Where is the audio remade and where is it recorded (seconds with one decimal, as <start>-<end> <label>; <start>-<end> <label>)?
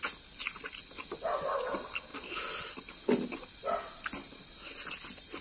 0.0-5.4 recorded